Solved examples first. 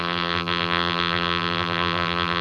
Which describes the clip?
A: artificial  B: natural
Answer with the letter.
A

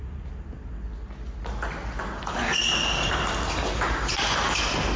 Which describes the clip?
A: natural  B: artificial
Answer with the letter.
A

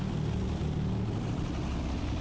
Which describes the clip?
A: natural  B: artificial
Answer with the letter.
A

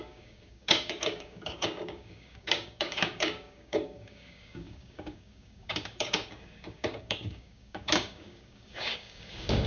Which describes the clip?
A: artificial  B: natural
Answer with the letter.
A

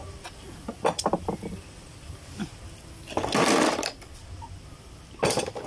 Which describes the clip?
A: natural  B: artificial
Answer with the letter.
A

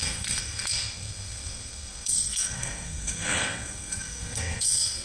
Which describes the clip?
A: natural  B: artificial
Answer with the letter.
B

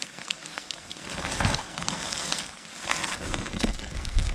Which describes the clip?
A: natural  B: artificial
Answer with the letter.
B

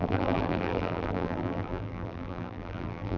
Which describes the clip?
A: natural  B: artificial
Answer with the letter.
B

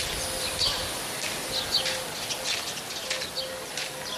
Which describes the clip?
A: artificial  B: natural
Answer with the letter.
B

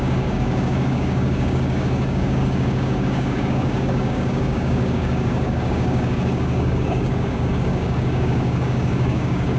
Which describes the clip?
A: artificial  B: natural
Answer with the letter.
A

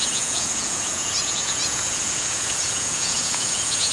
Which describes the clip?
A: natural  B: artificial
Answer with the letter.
B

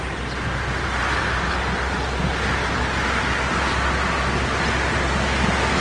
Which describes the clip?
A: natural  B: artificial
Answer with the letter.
A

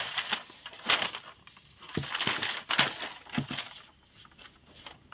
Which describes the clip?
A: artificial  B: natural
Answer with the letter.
B